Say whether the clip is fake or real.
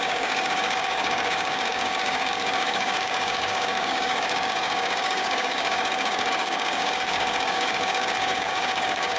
fake